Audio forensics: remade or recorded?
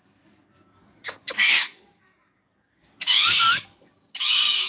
remade